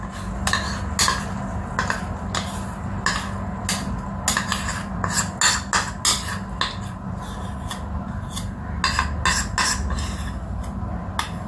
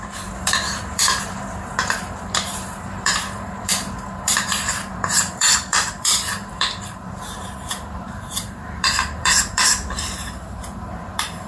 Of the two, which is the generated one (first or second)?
second